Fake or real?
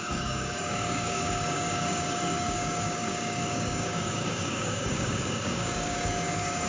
fake